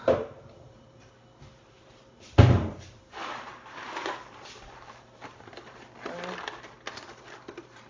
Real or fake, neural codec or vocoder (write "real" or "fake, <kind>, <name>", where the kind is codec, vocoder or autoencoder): fake, vocoder, BigVGAN v2